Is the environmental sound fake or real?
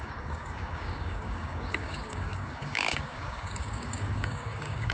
fake